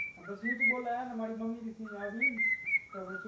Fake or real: fake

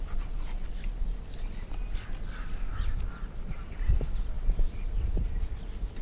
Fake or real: real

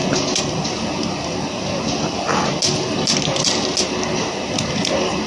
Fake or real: real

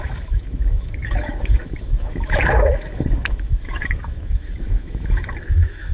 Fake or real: fake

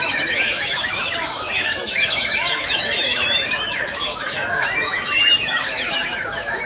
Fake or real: fake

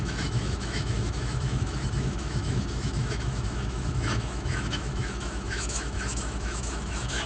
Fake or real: fake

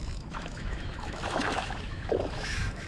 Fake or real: fake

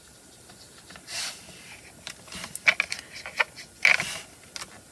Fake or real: real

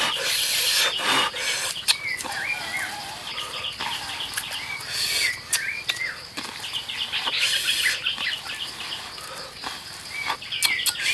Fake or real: real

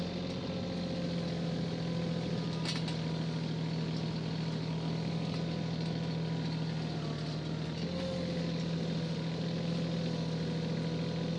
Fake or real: real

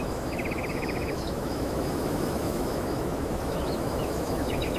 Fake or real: fake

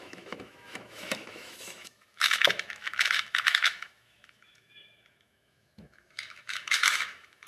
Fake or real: fake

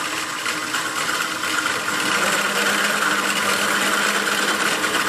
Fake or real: real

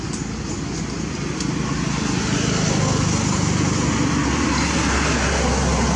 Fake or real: real